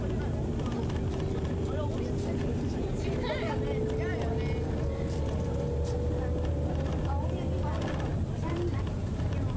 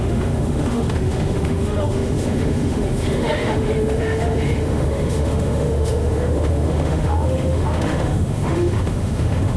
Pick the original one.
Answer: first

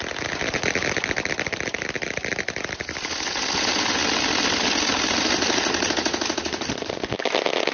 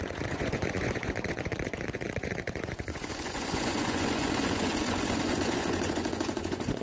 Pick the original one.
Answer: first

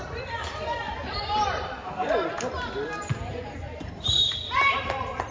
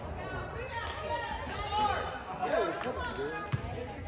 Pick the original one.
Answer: second